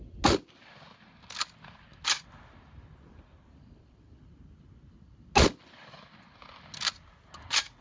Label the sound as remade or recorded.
recorded